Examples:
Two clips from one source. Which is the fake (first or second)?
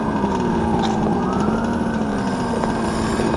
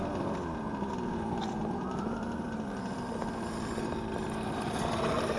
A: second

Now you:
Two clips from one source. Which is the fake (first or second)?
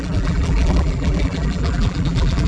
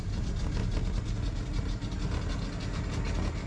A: first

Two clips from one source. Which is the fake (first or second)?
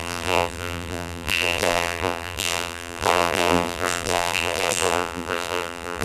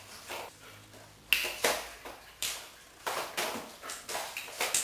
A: first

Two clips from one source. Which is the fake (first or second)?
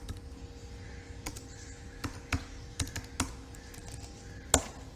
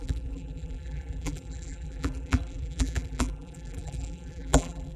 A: second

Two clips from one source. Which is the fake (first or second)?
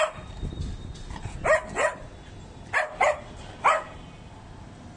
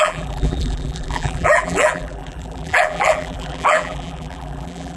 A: second